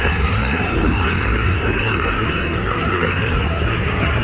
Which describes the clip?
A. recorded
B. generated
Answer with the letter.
B